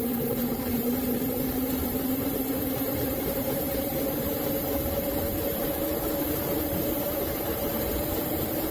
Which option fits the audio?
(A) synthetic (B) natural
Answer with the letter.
A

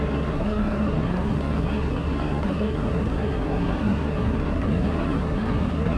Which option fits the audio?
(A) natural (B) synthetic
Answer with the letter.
B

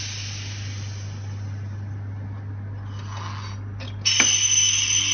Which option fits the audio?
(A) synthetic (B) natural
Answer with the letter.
B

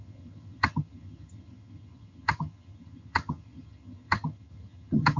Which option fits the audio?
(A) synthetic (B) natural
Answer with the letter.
A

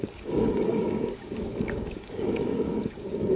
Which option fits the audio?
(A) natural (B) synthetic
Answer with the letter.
B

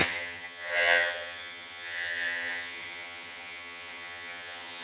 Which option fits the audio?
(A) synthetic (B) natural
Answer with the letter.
A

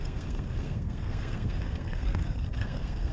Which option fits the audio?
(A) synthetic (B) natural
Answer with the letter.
A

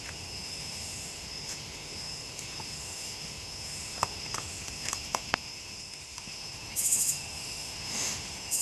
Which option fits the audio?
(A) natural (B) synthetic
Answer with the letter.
B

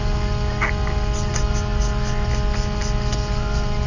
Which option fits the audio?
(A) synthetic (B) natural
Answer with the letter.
B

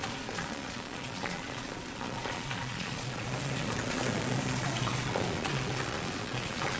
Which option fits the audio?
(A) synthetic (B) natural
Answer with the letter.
A